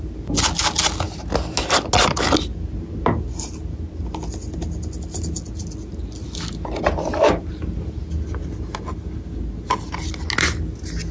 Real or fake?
real